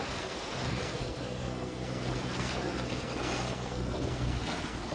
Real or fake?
fake